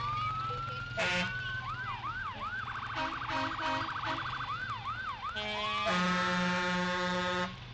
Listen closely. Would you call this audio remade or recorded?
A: recorded